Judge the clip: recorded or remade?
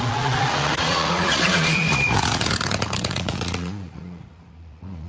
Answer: remade